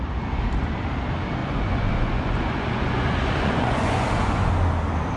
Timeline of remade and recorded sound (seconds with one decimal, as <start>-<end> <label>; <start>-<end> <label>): 0.0-1.4 recorded; 1.4-4.5 remade; 4.5-5.2 recorded